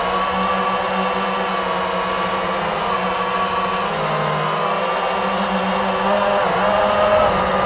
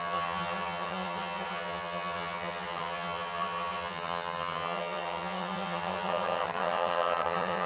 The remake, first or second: second